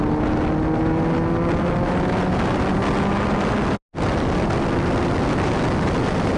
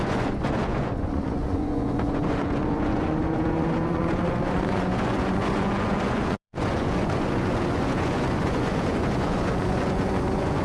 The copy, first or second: second